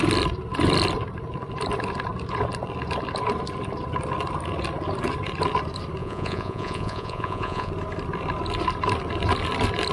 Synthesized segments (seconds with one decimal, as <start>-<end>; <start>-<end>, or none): 6.0-7.7